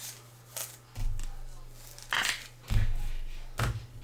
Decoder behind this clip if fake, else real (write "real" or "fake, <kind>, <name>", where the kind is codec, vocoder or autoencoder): real